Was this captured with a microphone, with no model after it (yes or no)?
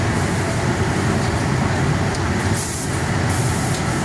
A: no